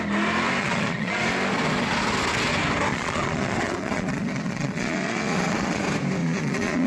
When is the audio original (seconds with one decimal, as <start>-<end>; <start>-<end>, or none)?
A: 0.0-0.6; 1.2-2.9; 5.8-6.2